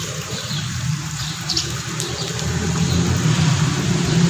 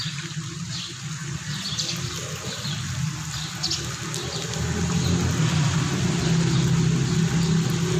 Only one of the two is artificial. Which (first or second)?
first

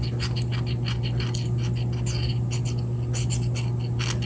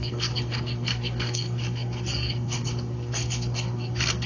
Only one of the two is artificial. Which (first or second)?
second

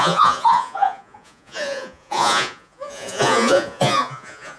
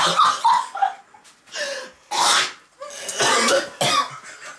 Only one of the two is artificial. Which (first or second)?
first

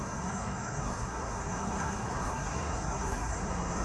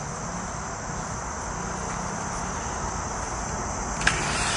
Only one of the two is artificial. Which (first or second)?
first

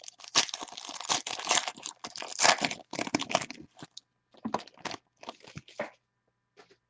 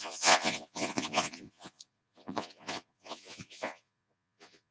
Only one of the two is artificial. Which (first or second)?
second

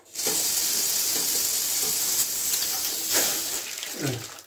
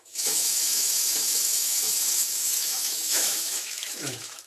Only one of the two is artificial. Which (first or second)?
second